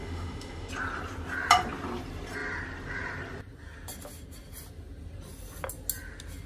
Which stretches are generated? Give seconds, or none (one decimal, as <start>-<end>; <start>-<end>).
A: 0.0-0.7

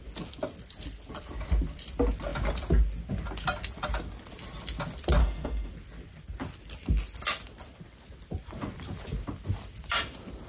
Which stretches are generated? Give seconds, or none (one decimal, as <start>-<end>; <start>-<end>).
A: 5.2-5.7

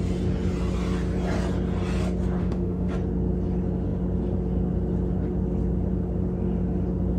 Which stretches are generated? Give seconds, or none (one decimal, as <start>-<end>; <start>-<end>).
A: 2.4-2.9